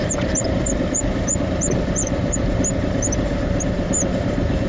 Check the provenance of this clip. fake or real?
fake